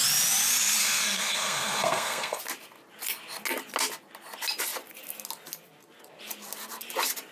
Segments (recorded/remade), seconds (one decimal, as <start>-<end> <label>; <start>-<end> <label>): 0.0-0.8 recorded; 0.8-2.4 remade; 2.4-7.3 recorded